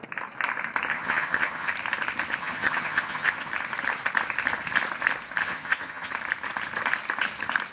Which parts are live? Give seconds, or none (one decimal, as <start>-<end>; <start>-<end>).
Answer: 0.0-0.9; 1.7-2.4; 3.5-5.4; 6.1-7.7